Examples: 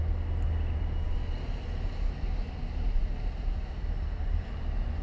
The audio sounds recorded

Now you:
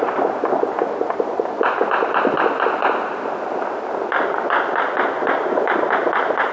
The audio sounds recorded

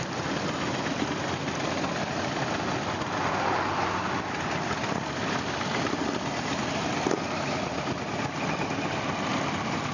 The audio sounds recorded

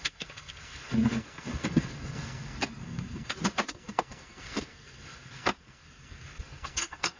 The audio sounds remade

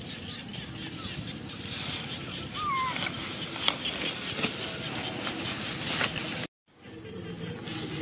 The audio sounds recorded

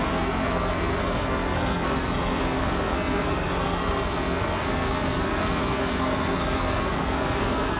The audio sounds remade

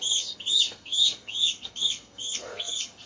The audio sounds remade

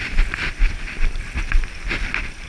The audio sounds recorded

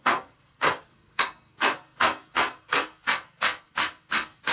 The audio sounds remade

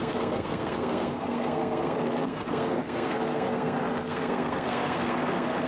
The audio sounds remade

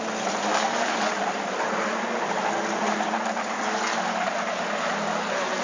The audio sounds recorded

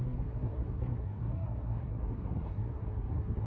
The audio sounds remade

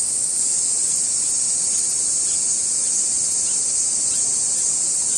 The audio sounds recorded